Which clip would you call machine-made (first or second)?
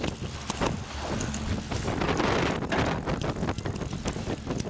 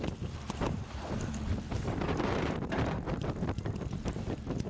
second